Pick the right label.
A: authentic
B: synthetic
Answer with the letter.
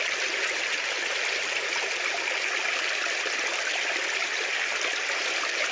A